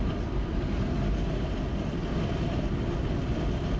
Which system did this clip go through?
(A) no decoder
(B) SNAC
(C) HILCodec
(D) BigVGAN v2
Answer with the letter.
A